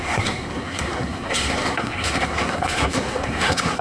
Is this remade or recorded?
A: remade